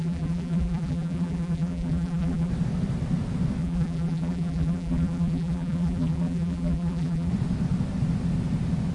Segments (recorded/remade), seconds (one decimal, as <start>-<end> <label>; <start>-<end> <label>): 0.0-2.5 remade; 2.5-3.6 recorded; 3.6-7.3 remade; 7.3-8.9 recorded